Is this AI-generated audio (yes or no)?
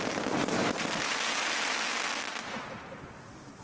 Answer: no